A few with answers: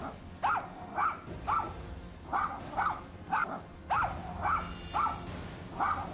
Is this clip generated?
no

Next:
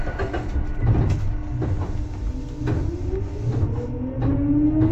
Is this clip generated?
no